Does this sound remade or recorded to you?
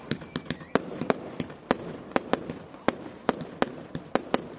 remade